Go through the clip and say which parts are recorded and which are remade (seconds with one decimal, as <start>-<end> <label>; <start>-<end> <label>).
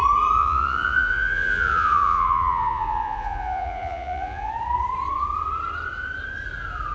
0.0-0.4 recorded; 0.4-4.5 remade; 4.5-6.9 recorded